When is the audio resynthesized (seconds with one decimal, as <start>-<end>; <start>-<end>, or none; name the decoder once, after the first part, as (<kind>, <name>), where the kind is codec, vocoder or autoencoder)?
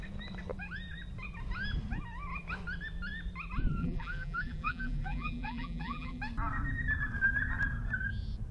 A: 3.8-6.2 (vocoder, BigVGAN v2)